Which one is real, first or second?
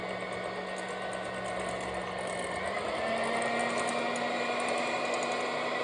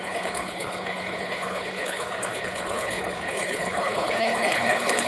first